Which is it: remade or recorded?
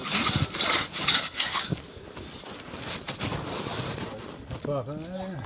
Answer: recorded